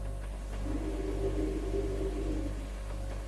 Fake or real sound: real